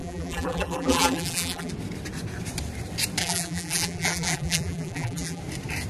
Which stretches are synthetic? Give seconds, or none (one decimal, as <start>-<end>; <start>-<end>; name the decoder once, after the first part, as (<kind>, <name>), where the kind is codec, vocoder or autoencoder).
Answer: 0.0-1.7 (vocoder, BigVGAN v2); 3.2-5.4